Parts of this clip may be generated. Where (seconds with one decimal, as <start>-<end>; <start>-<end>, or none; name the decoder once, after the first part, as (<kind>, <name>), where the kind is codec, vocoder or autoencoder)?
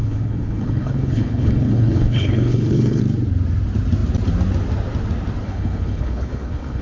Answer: 0.0-3.0 (codec, HILCodec); 5.4-6.8